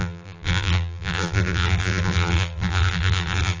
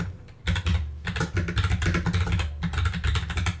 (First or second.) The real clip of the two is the second